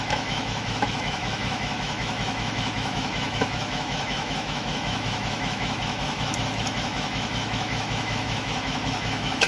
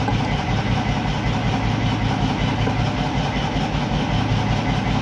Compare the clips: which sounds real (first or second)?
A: second